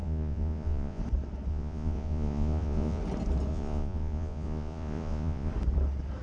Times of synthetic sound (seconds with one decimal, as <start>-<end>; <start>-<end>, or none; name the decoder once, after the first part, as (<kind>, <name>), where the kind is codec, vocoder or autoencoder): 0.0-1.0 (vocoder, Vocos); 1.5-3.0; 3.5-5.5